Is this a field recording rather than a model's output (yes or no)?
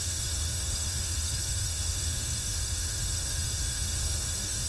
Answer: no